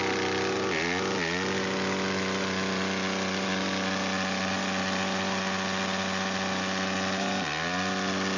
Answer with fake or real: real